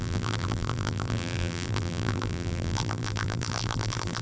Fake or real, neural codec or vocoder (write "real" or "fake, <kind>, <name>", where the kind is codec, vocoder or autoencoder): fake, vocoder, BigVGAN v2